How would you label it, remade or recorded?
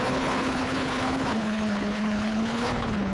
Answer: remade